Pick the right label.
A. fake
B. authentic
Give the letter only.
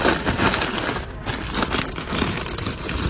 B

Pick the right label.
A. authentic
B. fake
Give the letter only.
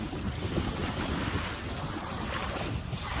B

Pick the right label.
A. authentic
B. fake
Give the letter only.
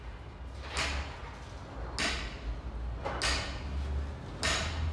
A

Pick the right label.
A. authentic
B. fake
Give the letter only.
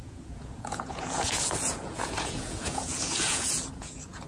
B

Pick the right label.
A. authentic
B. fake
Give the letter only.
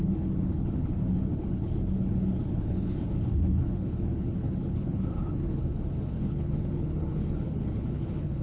B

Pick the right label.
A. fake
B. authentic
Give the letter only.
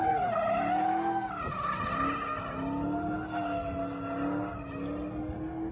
B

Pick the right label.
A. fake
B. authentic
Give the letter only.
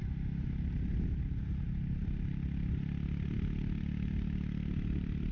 B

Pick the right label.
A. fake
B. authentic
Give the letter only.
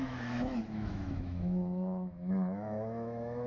A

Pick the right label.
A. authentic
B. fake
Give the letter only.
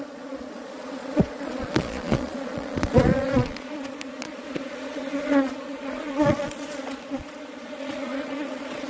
B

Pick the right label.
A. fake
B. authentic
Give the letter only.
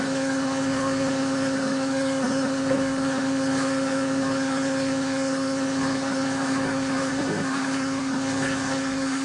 A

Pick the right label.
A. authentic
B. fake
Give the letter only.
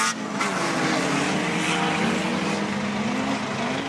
A